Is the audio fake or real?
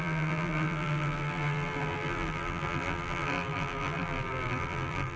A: fake